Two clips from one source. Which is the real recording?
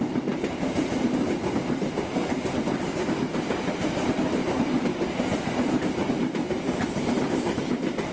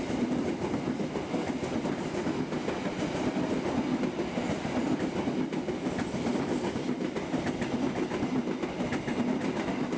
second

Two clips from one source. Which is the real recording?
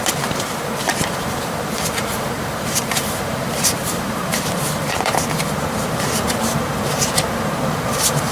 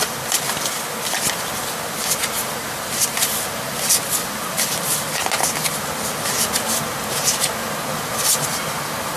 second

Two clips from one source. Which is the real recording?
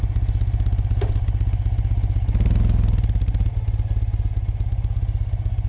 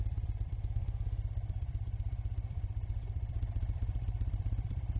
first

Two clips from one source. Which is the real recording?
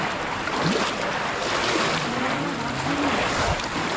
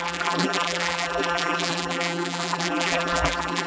first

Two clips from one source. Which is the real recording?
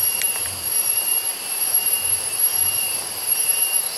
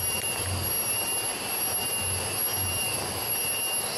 second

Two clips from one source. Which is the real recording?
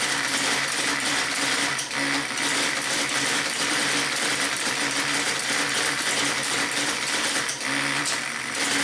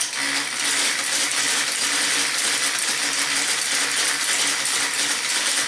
second